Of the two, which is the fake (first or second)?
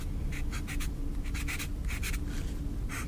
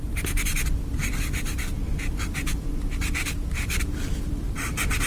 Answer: second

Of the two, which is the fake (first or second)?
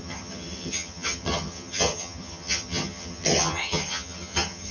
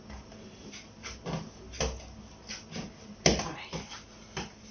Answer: first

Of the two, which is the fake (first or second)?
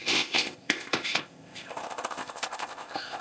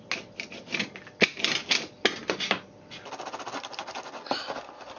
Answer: first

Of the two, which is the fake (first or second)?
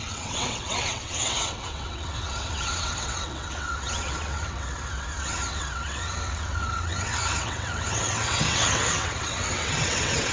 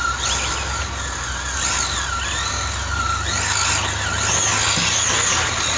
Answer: first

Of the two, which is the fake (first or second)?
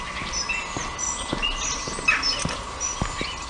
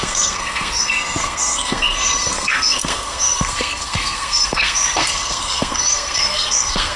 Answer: second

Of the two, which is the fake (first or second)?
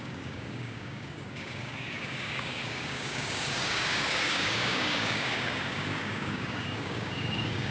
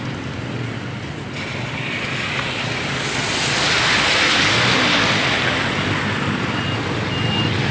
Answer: first